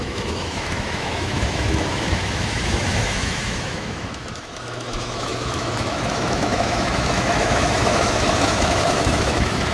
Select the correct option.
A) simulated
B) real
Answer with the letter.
A